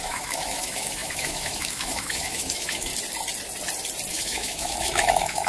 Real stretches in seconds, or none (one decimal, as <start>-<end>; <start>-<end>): 2.9-4.1